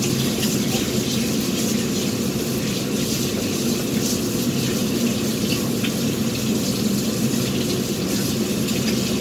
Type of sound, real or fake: real